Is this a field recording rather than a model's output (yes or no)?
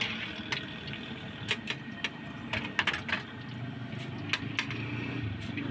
yes